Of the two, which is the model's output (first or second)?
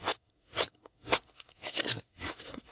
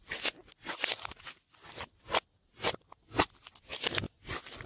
first